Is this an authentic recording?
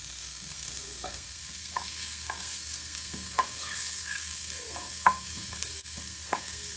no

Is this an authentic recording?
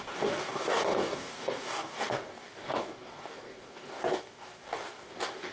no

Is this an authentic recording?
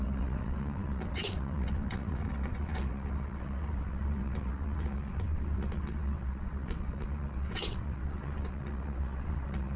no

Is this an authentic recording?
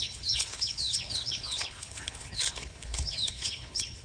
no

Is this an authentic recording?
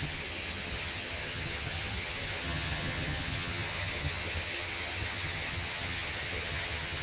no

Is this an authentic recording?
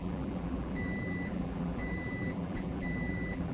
no